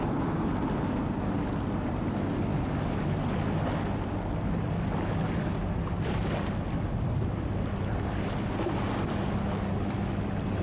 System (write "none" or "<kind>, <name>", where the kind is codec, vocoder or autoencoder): none